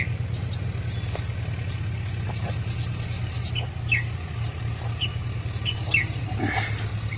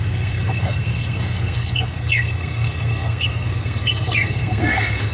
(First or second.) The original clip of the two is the first